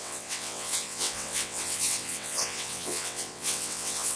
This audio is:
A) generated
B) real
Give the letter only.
A